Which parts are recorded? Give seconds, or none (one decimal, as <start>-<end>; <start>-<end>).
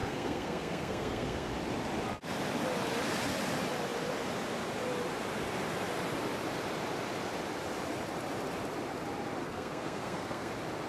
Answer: 1.5-9.4; 10.5-10.9